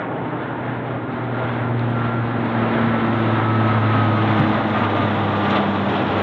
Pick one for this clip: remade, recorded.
recorded